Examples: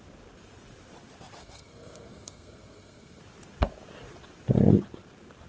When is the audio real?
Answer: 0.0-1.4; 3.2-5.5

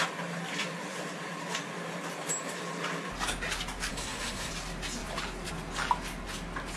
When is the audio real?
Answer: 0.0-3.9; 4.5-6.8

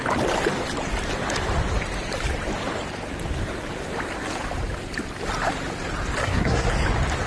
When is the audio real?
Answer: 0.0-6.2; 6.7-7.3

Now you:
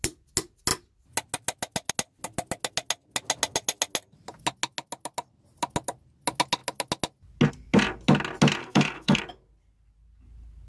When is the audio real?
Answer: 0.0-8.6; 9.2-10.7

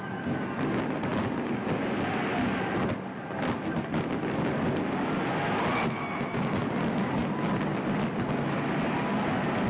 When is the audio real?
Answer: 0.0-9.7

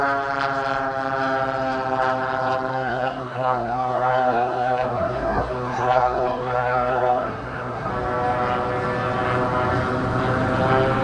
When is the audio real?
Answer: 0.0-2.7; 7.9-11.0